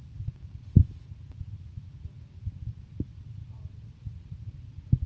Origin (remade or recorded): recorded